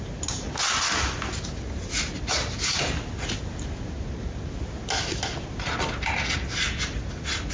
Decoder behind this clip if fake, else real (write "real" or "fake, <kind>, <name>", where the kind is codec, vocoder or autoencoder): real